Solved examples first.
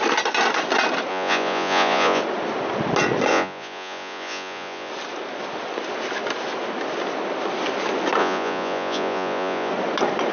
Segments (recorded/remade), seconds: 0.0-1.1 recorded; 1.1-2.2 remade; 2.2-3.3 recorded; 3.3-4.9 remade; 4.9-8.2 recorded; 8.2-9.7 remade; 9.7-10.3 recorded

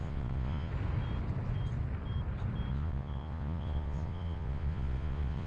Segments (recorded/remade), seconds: 0.0-0.7 remade; 0.7-2.7 recorded; 2.7-5.5 remade

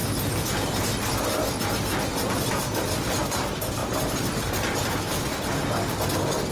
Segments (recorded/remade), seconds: 0.0-6.5 recorded

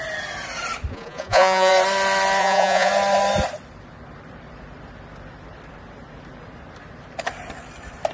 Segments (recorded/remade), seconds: 0.0-0.9 recorded; 0.9-1.7 remade; 1.7-2.4 recorded; 2.4-2.9 remade; 2.9-8.1 recorded

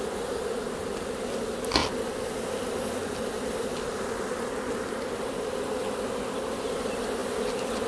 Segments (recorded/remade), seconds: 0.0-7.9 recorded

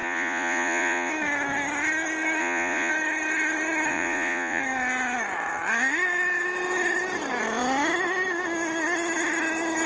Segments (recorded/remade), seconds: 0.0-1.1 remade; 1.1-2.4 recorded; 2.4-2.9 remade; 2.9-3.9 recorded; 3.9-4.6 remade; 4.6-9.9 recorded

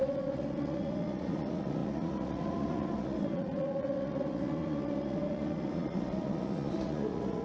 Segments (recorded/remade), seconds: 0.0-7.4 remade